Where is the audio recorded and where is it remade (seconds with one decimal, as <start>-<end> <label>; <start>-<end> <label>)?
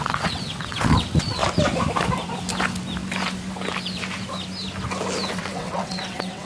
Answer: 0.0-1.4 remade; 1.4-5.3 recorded; 5.3-6.5 remade